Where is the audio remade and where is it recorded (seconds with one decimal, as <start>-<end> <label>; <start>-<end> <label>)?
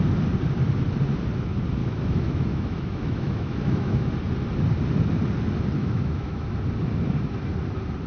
0.0-1.8 recorded; 1.8-4.1 remade; 4.1-5.8 recorded; 5.8-6.5 remade; 6.5-8.1 recorded